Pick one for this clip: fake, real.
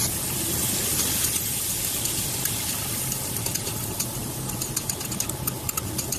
real